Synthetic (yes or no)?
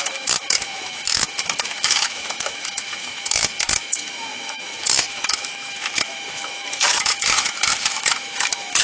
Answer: yes